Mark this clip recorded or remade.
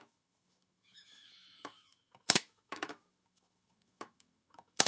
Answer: remade